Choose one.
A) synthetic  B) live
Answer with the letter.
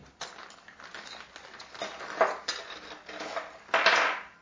B